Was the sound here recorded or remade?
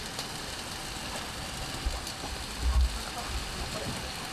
recorded